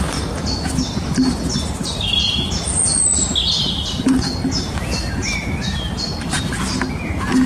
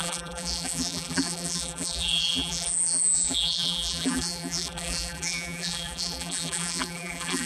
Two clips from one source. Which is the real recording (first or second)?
first